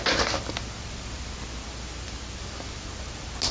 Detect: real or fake real